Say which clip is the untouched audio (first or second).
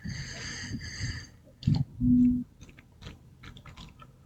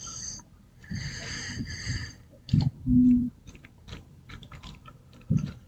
first